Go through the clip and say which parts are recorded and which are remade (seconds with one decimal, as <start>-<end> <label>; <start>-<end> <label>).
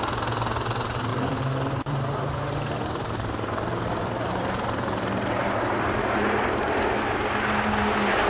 0.0-1.1 recorded; 1.1-6.0 remade; 6.0-8.3 recorded